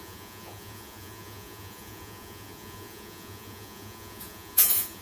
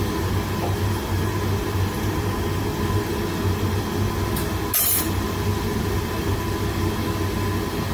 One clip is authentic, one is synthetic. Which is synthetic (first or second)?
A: first